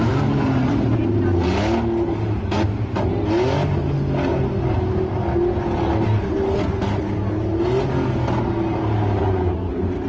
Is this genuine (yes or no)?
yes